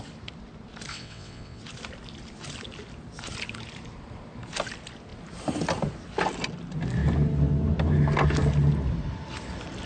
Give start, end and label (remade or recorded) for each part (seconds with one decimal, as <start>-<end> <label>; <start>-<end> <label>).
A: 0.0-0.9 recorded; 0.9-1.6 remade; 1.6-9.9 recorded